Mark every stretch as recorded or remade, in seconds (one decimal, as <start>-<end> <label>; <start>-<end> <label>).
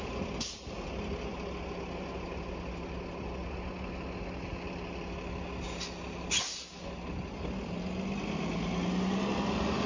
0.0-9.9 recorded